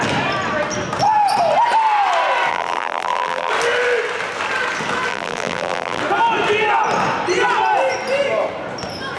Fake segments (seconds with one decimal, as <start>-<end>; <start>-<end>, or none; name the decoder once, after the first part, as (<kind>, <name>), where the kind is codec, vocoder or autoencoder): 2.5-3.5 (vocoder, BigVGAN v2); 5.1-6.0